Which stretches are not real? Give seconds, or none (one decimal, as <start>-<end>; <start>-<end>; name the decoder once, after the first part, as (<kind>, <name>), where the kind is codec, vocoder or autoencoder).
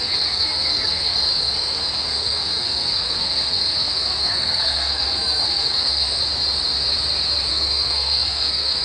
0.0-6.2 (codec, SNAC); 7.5-8.8